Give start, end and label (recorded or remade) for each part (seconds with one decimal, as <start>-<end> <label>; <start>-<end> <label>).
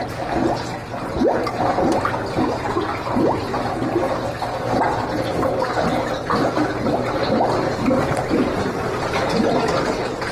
0.0-5.9 recorded; 5.9-9.6 remade; 9.6-10.3 recorded